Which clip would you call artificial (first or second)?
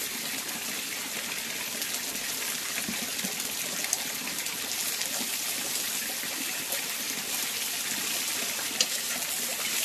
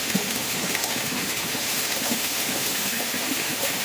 second